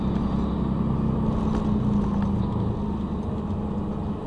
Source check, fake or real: real